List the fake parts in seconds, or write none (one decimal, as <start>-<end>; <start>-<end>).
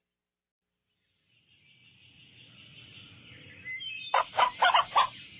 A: none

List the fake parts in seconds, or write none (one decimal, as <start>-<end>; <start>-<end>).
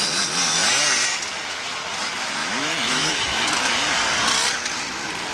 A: 2.4-3.7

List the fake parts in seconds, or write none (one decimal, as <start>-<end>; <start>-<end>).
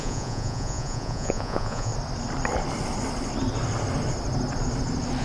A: 0.0-1.9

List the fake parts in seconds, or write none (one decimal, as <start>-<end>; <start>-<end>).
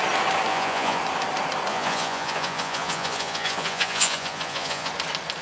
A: 0.5-1.0; 1.7-4.9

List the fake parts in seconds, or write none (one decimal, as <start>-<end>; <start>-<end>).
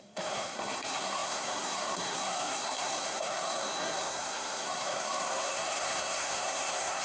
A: 0.0-7.0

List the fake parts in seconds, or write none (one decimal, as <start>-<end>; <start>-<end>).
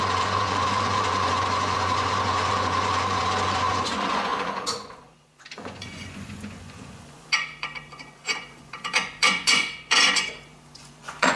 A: 0.0-11.4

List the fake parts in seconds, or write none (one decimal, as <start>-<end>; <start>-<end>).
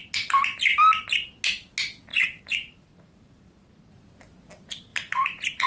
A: 2.1-3.8; 4.9-5.7